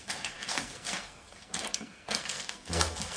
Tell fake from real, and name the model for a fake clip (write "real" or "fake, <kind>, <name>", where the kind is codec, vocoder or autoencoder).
fake, codec, SNAC